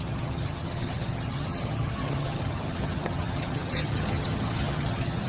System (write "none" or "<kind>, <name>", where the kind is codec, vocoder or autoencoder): vocoder, HiFi-GAN